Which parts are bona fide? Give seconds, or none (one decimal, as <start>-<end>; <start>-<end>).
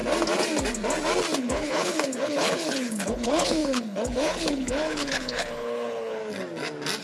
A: 0.0-1.4; 6.2-7.0